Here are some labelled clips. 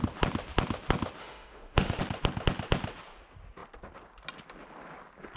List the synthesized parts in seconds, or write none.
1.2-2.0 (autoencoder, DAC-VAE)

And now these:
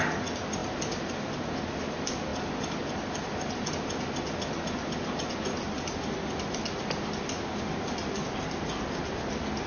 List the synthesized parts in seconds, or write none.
none